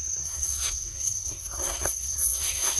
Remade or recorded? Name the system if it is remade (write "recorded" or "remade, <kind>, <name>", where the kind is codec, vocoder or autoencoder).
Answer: remade, codec, SNAC